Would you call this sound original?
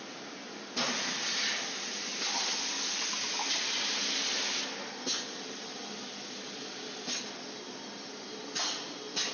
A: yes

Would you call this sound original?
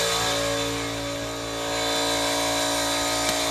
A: yes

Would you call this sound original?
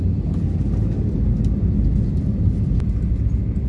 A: yes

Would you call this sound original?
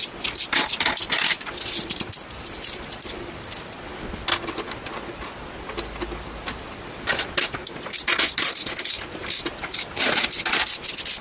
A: yes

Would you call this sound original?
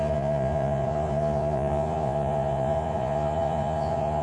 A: no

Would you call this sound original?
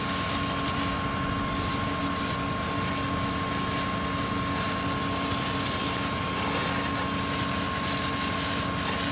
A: yes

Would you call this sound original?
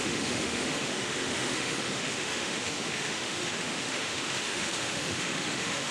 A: no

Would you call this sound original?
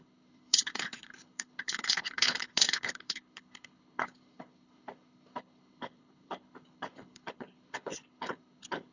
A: no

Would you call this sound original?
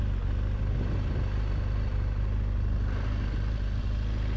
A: yes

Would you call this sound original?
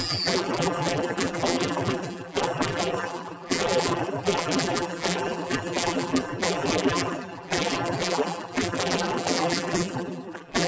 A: no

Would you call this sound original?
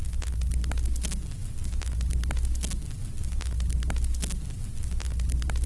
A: yes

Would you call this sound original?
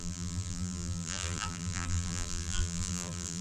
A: no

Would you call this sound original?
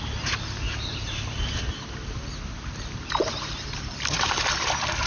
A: yes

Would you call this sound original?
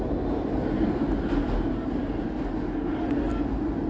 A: yes